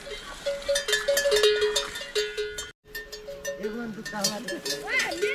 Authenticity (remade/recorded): recorded